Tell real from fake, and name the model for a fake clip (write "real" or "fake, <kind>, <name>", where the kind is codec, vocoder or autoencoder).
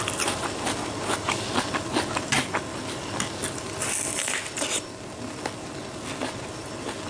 real